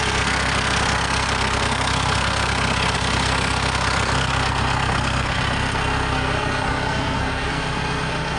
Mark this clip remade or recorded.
remade